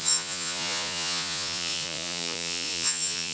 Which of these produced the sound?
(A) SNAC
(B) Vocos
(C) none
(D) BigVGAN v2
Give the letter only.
B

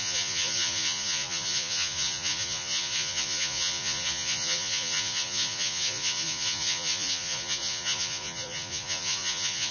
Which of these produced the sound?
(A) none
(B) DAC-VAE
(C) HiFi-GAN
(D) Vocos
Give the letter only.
D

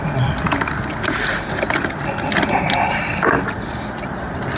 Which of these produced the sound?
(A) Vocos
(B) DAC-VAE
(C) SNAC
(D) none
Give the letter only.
D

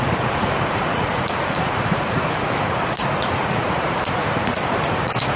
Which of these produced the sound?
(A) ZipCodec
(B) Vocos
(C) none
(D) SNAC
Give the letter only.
B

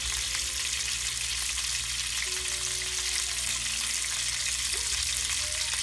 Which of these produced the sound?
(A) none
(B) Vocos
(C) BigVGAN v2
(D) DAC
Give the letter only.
A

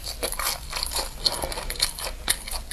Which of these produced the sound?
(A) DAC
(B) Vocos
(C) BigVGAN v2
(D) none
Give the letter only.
D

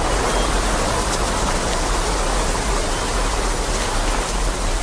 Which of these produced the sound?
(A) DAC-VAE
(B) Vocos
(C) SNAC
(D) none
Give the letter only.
D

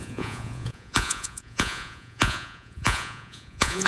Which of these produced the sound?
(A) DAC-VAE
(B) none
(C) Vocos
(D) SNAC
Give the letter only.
C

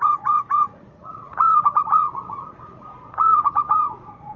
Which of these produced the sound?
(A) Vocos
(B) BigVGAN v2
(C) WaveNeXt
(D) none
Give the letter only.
A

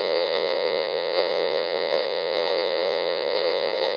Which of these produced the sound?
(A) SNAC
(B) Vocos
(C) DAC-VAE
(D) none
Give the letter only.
B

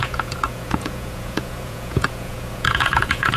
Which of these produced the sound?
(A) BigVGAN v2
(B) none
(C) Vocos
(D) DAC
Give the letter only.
C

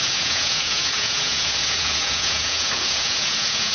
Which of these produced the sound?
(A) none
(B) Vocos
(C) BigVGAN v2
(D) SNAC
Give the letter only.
B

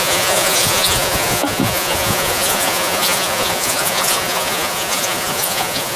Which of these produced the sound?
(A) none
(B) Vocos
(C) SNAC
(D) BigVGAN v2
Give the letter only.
B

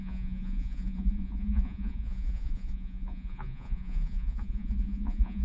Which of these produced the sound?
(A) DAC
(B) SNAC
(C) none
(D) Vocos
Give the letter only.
D